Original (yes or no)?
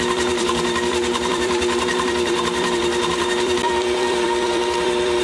no